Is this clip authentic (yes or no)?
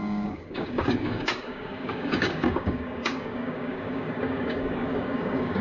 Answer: no